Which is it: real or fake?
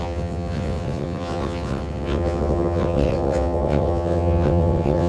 fake